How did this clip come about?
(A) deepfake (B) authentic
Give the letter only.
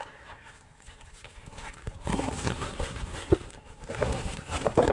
A